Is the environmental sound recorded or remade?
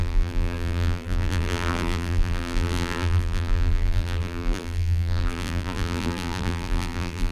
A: remade